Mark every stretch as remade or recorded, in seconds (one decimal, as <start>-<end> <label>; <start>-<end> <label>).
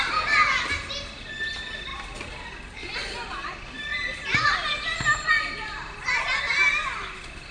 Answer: 0.0-7.5 recorded